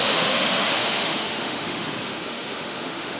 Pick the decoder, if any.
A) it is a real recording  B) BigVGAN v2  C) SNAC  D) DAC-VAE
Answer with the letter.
D